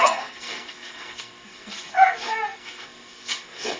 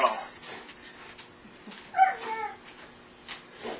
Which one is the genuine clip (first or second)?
second